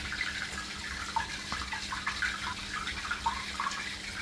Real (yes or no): yes